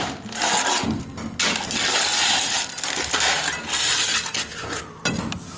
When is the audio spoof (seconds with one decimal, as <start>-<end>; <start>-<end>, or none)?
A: none